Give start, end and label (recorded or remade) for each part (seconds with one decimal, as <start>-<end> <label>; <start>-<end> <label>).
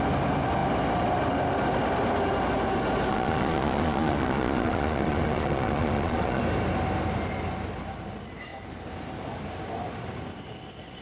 0.0-3.1 recorded; 3.1-6.4 remade; 6.4-11.0 recorded